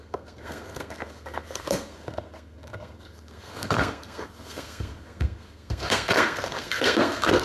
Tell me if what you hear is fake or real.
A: fake